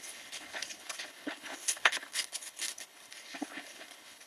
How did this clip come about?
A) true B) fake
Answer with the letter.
B